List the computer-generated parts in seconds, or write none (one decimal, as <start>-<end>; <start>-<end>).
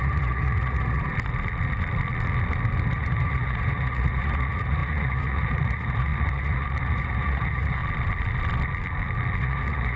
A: 0.0-1.1; 2.9-7.8; 9.4-10.0